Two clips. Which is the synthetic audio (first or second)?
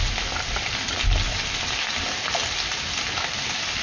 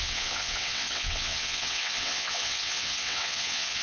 second